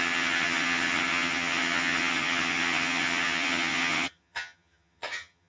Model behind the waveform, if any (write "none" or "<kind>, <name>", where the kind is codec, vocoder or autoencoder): vocoder, HiFi-GAN